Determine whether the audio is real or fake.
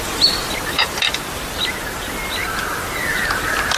real